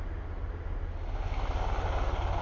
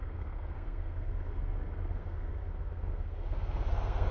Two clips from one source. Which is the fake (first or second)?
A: second